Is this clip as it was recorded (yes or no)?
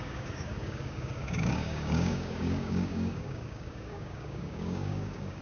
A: no